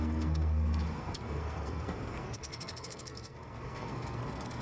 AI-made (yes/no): yes